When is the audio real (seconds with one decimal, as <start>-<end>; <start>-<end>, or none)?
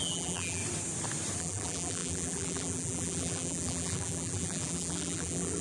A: 0.6-1.4